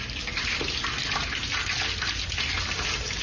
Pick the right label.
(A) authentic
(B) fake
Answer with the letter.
A